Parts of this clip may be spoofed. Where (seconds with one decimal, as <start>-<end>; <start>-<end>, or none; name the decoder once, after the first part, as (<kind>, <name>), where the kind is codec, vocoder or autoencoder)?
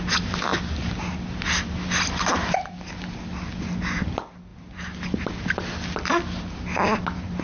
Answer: none